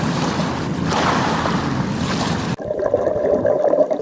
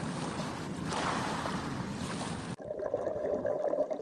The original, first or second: first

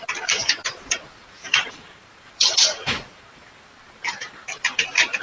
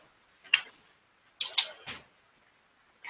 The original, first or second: second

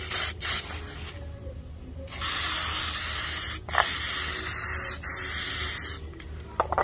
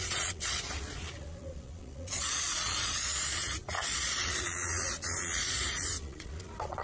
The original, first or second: first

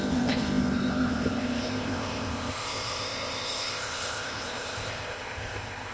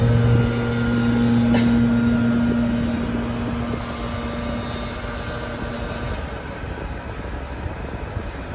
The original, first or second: second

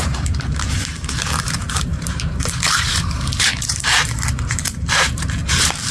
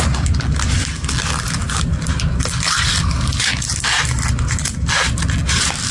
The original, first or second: second